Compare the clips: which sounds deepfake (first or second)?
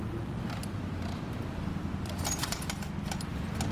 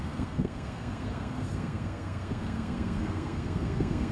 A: second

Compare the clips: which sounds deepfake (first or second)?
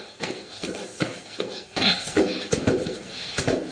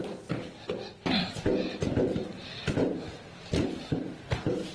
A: first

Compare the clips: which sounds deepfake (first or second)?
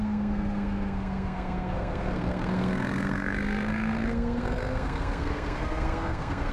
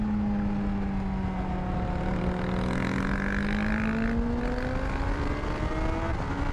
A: first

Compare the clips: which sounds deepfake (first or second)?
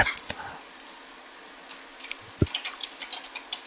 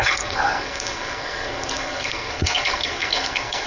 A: second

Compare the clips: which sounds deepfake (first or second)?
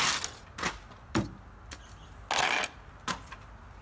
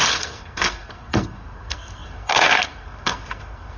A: second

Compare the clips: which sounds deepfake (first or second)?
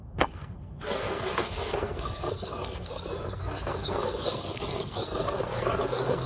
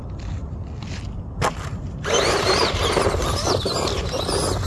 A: first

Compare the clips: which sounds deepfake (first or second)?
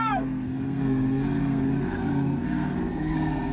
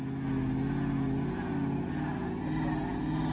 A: first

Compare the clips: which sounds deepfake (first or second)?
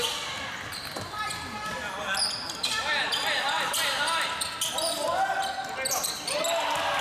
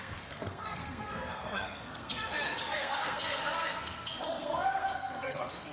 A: second